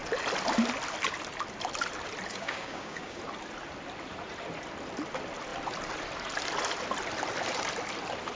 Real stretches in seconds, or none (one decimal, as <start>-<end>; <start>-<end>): 0.0-2.3; 3.2-8.3